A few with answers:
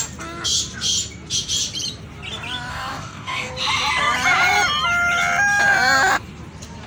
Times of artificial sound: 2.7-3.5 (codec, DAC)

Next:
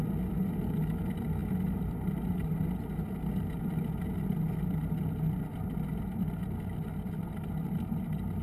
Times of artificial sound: none

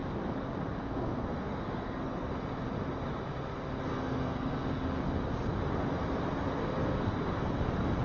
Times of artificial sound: 0.8-2.3 (codec, SNAC); 3.9-4.5; 6.6-7.5

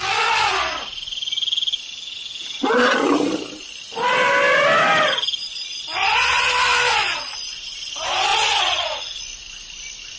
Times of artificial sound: 8.3-9.2 (vocoder, Vocos)

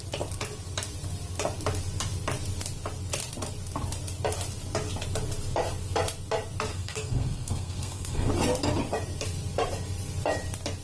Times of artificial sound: 6.7-8.3 (codec, SNAC)

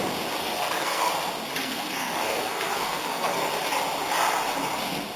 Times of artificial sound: 0.4-1.1 (codec, SNAC); 1.6-3.5

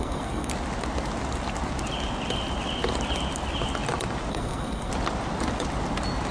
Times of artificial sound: 0.0-0.5 (codec, SNAC); 4.3-4.9